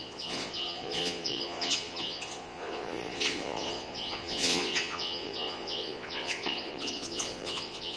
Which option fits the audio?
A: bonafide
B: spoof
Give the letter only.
B